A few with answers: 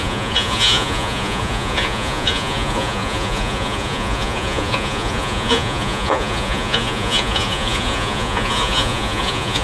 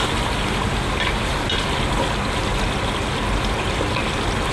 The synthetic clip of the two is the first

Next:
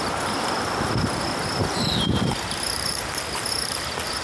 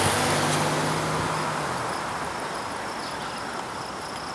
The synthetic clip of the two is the first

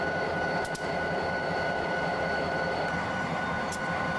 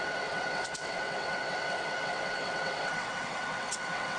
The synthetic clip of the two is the second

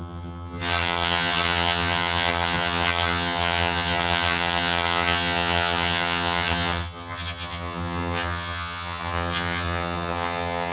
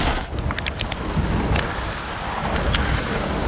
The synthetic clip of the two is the first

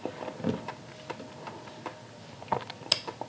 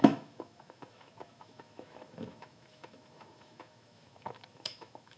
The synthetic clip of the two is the second